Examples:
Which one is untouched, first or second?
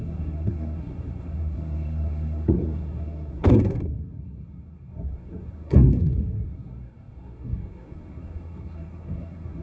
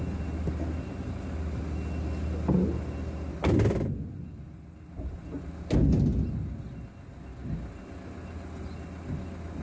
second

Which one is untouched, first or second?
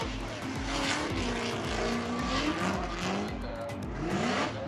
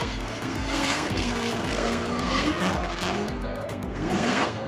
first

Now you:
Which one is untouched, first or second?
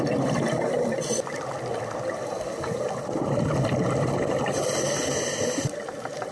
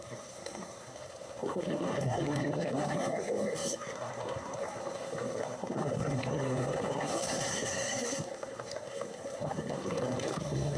first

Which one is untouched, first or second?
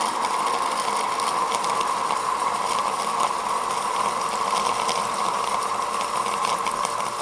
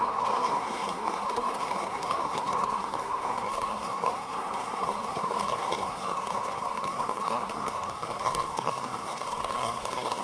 first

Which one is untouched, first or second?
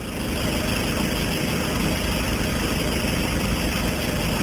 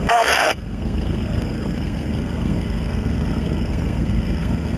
first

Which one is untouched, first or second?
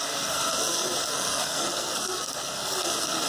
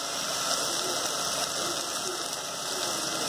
second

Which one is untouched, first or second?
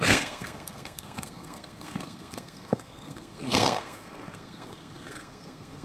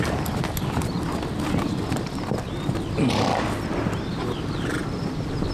second